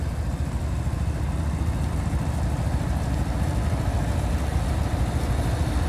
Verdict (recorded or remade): recorded